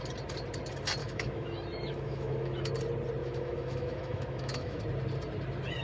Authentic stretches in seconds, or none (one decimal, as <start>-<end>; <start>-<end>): 0.0-1.0; 2.7-3.2; 4.8-5.8